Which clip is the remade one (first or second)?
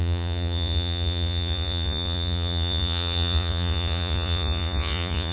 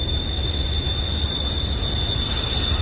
first